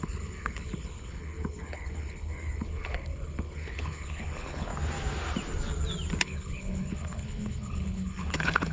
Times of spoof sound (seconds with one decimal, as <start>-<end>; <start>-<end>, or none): 0.0-4.7; 6.2-8.7